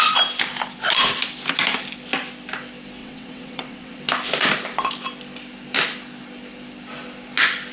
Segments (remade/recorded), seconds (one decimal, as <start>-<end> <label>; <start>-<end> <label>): 0.0-3.0 recorded; 3.0-4.0 remade; 4.0-7.7 recorded